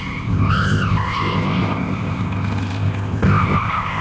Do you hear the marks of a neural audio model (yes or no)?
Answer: yes